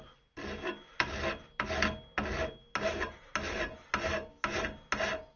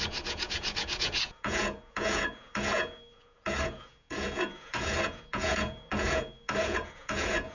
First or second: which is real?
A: first